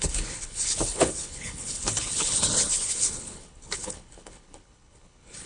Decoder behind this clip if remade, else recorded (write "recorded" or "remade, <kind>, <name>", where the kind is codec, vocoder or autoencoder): remade, codec, HILCodec